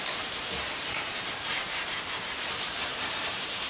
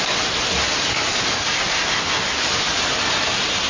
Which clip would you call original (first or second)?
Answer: second